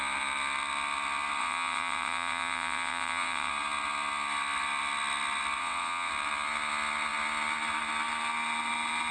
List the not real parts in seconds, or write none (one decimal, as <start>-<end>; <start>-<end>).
1.4-3.5; 5.6-6.1